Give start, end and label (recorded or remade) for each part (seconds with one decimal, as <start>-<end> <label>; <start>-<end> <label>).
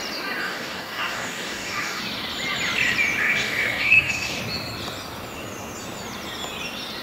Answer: 0.0-0.4 recorded; 0.4-2.0 remade; 2.0-3.2 recorded; 3.2-4.4 remade; 4.4-7.0 recorded